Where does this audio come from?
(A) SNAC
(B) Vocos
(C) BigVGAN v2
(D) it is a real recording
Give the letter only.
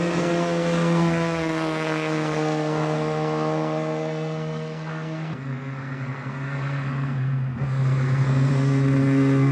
A